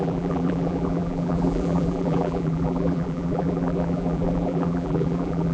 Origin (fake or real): fake